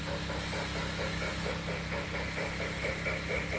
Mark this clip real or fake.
real